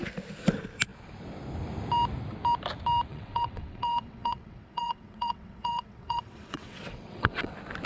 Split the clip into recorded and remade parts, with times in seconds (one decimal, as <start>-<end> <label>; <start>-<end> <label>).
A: 0.0-3.1 recorded; 3.1-7.5 remade; 7.5-7.9 recorded